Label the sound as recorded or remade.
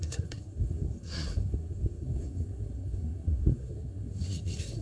remade